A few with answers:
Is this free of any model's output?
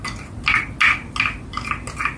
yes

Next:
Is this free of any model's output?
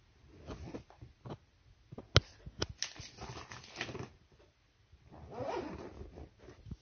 yes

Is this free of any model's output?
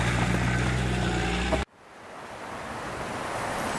yes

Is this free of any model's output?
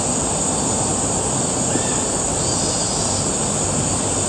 yes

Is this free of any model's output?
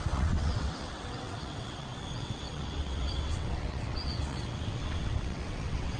no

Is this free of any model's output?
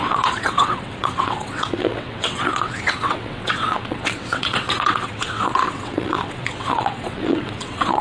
no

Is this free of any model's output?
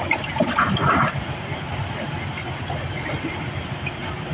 yes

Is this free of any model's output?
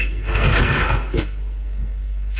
no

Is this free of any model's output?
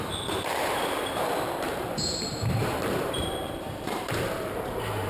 no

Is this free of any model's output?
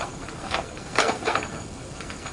no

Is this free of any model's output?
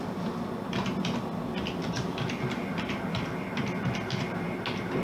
yes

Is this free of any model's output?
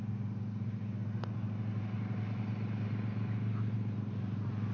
yes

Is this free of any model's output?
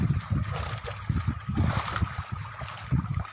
yes